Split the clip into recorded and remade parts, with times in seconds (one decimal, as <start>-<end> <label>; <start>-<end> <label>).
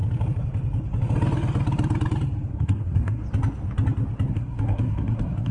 0.0-2.5 recorded; 2.5-3.2 remade; 3.2-4.3 recorded; 4.3-5.5 remade